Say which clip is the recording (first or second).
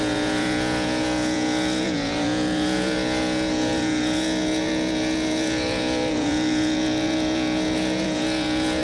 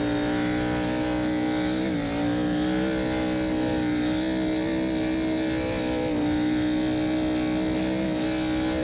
second